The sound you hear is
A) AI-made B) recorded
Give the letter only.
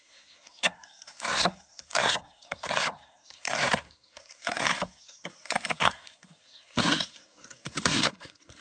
A